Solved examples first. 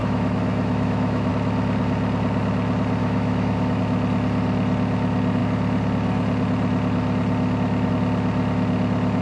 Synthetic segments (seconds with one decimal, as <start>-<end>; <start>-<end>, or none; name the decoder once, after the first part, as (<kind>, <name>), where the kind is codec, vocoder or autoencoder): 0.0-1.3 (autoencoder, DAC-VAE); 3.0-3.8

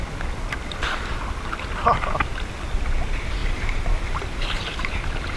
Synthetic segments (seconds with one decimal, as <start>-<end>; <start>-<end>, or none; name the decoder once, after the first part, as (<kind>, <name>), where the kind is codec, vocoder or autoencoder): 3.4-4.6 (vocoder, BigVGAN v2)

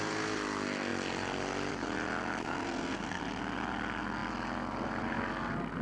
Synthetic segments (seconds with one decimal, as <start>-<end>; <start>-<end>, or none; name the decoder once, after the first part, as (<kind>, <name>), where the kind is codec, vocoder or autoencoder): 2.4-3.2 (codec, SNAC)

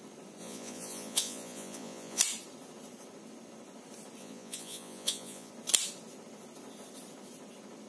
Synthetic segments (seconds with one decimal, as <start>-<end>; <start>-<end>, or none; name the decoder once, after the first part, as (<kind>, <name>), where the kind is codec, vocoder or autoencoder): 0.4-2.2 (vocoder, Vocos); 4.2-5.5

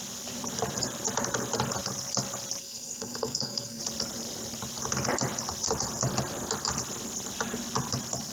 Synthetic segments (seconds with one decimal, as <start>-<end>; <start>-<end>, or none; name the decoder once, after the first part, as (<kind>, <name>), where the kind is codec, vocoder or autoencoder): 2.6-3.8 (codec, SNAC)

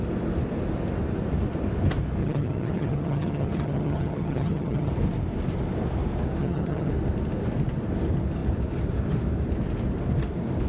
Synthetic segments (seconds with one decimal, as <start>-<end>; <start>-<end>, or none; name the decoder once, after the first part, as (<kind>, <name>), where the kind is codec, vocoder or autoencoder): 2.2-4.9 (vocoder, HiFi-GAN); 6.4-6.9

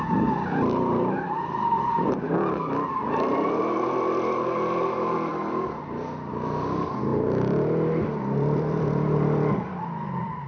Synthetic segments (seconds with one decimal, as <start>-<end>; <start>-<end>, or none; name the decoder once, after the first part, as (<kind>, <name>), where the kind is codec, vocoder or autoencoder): 0.0-10.5 (vocoder, BigVGAN v2)

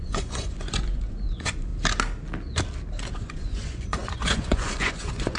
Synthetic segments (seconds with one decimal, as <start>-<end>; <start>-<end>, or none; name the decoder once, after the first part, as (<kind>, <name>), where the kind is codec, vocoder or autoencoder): 0.0-1.7 (vocoder, Vocos); 3.1-5.4